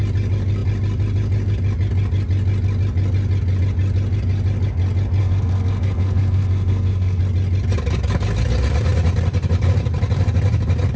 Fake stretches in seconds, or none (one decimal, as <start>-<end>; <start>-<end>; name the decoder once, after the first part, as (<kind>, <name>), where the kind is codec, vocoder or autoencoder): 5.2-7.2 (codec, SNAC)